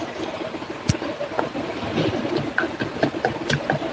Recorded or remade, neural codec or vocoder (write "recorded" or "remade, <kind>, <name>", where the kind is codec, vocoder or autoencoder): recorded